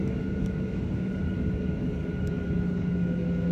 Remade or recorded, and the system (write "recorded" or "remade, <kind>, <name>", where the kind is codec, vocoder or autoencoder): remade, codec, DAC